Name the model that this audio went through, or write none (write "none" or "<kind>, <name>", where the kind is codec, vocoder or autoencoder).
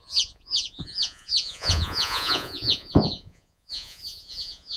vocoder, Vocos